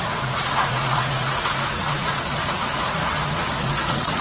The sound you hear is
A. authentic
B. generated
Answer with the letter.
B